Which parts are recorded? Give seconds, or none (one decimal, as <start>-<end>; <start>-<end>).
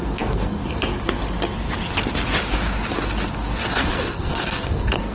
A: 0.6-3.7